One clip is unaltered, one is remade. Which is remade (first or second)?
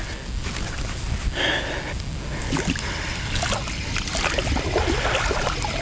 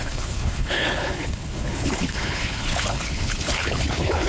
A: second